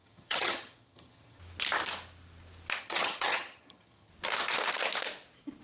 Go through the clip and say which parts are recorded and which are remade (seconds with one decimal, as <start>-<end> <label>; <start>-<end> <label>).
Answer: 0.0-1.4 remade; 1.4-2.8 recorded; 2.8-4.1 remade; 4.1-5.6 recorded